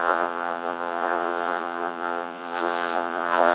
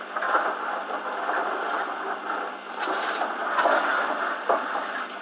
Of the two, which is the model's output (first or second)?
first